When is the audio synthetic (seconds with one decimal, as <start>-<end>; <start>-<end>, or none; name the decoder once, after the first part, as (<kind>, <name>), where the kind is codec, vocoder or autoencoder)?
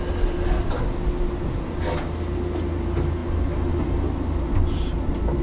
none